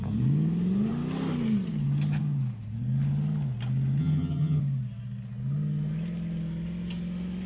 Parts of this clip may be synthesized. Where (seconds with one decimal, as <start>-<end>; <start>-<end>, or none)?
4.0-4.6